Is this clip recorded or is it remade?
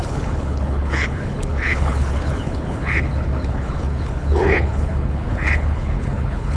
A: remade